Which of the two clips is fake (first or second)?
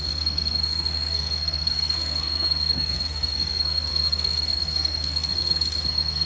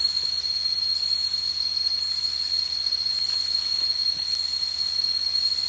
first